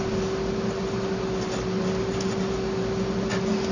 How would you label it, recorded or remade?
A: recorded